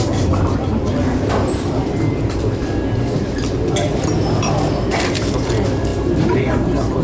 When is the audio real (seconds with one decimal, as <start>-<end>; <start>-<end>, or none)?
5.9-7.0